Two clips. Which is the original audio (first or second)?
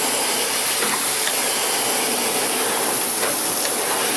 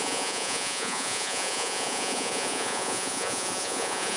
first